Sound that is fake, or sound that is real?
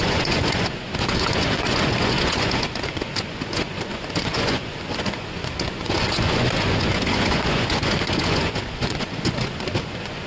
fake